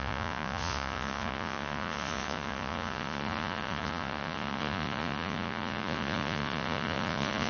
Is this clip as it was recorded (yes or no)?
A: no